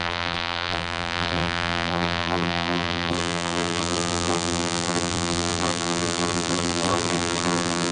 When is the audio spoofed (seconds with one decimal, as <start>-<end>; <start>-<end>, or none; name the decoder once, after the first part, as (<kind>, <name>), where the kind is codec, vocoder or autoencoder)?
0.0-7.9 (vocoder, BigVGAN v2)